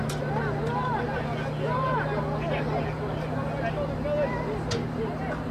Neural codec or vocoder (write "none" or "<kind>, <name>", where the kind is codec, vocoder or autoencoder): none